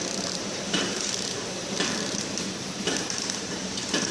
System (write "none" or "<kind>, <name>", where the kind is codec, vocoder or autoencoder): vocoder, BigVGAN v2